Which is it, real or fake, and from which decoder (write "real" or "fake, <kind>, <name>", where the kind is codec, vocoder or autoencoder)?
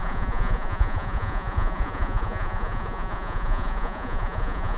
fake, vocoder, Vocos